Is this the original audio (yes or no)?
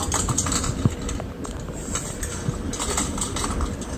yes